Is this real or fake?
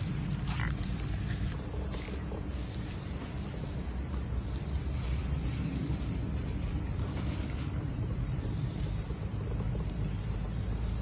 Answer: fake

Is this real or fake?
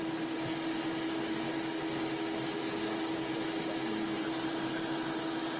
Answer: real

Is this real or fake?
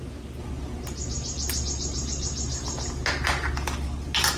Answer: real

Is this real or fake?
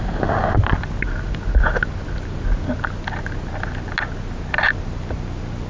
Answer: real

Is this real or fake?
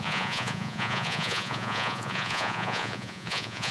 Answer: fake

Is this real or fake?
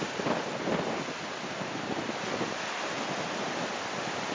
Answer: real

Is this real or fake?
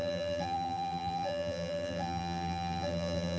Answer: fake